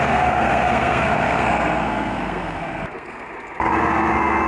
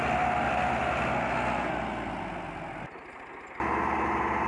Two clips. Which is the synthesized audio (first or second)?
first